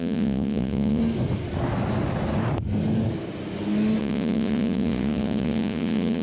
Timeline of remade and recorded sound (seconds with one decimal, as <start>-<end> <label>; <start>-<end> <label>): 0.0-1.0 remade; 1.0-4.0 recorded; 4.0-6.2 remade